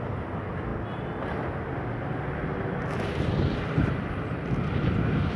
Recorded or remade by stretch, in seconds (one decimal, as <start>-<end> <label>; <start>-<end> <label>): 0.0-5.4 recorded